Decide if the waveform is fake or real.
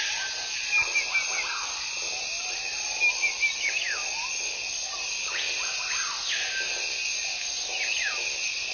real